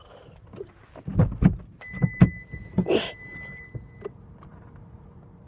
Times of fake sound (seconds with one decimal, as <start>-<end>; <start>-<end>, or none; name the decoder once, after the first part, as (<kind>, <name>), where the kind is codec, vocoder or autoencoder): none